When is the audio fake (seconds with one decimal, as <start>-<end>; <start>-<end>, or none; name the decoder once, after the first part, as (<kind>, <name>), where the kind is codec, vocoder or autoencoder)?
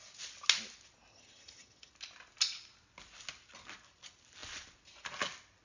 1.1-1.9 (vocoder, HiFi-GAN)